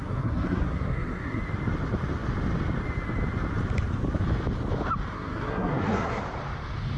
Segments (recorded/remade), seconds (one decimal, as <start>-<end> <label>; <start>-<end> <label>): 0.0-1.4 remade; 1.4-5.1 recorded; 5.1-6.2 remade; 6.2-7.0 recorded